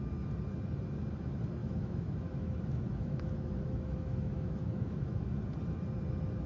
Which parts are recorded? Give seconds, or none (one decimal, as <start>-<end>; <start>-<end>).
0.0-1.6; 5.2-6.5